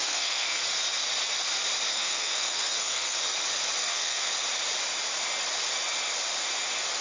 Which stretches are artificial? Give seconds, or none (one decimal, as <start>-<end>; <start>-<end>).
0.0-0.6; 1.9-3.2; 3.8-4.3

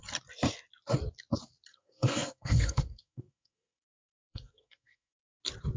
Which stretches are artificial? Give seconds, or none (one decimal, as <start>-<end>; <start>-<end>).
1.7-5.2

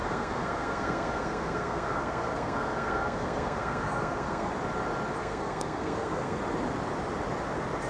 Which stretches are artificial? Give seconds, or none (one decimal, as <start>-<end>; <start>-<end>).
0.0-4.5; 5.2-6.4

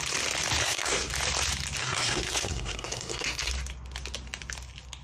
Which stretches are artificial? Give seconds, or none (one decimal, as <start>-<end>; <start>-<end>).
0.6-1.1; 1.8-3.5

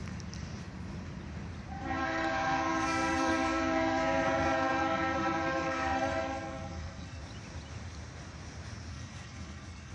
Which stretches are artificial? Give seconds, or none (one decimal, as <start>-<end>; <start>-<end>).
2.0-7.2; 8.9-9.9